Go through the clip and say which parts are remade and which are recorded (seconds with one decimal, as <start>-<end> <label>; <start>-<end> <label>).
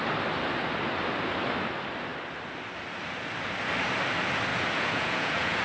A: 0.0-4.5 recorded; 4.5-5.6 remade